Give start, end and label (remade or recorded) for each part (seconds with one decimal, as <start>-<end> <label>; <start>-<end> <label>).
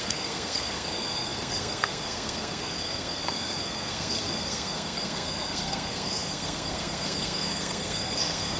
0.0-8.6 remade